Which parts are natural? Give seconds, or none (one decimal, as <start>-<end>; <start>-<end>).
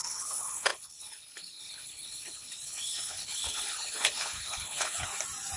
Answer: 5.1-5.6